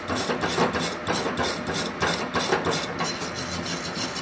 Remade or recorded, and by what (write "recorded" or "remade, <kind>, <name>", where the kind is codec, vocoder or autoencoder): recorded